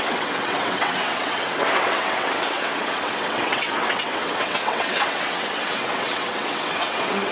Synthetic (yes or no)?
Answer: yes